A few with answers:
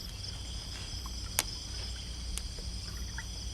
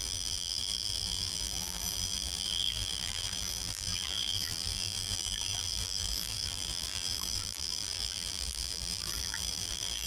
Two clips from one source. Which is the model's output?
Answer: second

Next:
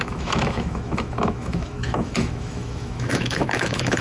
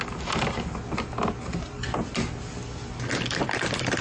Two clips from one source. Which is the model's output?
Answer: first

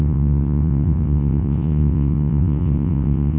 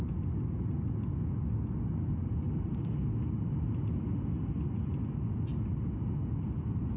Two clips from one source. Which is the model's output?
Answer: first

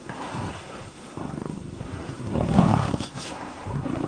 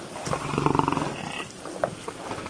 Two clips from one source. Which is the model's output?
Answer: first